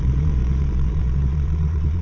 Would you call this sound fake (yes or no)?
yes